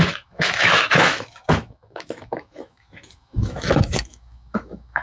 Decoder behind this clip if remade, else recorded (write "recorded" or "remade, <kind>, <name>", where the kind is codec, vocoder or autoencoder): remade, autoencoder, DAC-VAE